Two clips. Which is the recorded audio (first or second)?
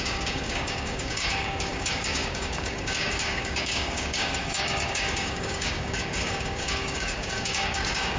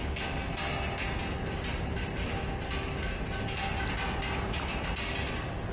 second